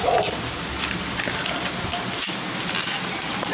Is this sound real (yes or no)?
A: yes